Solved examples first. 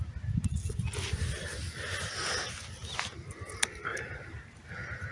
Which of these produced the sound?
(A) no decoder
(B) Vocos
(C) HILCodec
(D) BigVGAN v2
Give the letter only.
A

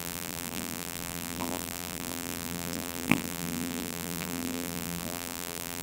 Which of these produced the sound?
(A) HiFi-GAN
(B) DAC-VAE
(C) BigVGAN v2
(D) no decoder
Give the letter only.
C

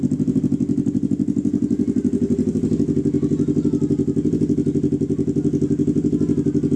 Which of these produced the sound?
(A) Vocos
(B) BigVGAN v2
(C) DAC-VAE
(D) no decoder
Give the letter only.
D